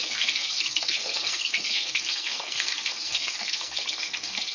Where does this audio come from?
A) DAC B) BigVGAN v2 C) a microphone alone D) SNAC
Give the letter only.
D